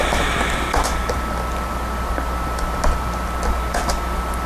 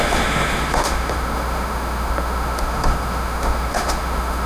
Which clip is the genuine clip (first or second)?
first